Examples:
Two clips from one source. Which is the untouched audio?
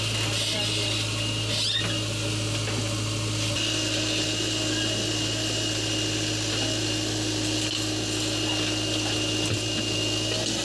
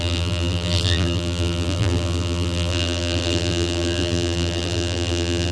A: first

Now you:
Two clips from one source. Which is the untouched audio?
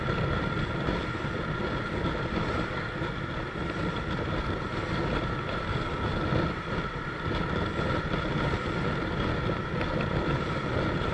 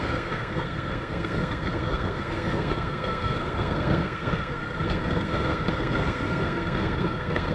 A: first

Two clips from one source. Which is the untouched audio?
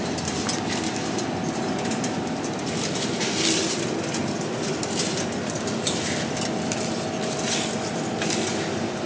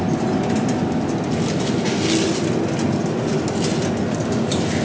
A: second